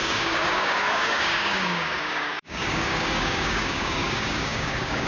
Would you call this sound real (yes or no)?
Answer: no